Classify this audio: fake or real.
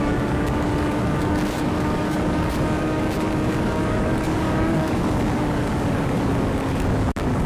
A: fake